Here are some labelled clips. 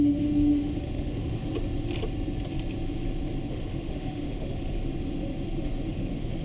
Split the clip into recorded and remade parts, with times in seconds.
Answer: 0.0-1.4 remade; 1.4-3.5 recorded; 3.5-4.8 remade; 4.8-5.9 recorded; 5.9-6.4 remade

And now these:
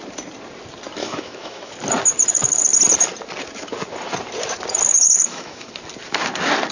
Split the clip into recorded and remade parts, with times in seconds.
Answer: 0.0-1.0 recorded; 1.0-1.7 remade; 1.7-4.9 recorded; 4.9-5.7 remade; 5.7-6.7 recorded

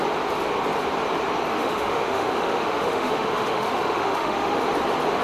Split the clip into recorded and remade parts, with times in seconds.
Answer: 0.0-1.5 recorded; 1.5-4.6 remade; 4.6-5.2 recorded

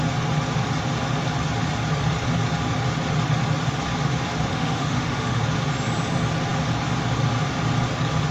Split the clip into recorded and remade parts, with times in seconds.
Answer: 0.0-4.5 recorded; 4.5-5.4 remade; 5.4-8.3 recorded

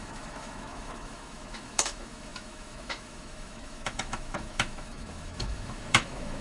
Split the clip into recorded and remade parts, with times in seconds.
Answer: 0.0-6.4 remade

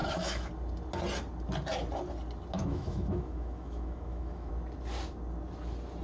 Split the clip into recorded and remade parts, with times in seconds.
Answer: 0.0-0.5 remade; 0.5-2.6 recorded; 2.6-4.5 remade; 4.5-6.0 recorded